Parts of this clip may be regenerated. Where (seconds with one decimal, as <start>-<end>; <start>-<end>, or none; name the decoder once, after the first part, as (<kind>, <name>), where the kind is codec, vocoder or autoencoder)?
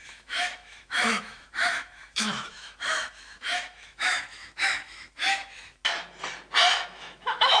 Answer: 0.0-5.8 (autoencoder, DAC-VAE); 6.7-7.6